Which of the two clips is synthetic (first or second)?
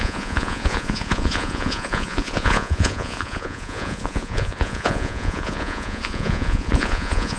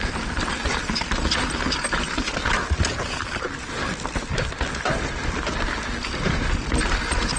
first